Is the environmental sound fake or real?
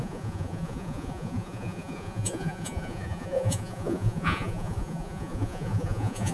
fake